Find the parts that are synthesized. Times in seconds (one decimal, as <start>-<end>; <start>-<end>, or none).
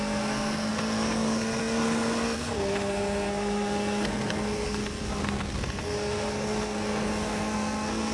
0.0-8.1